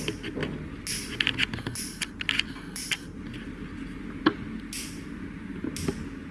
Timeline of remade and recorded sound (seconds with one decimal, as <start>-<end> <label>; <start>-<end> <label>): 0.0-6.3 recorded